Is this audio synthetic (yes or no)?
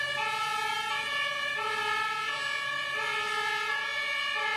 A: no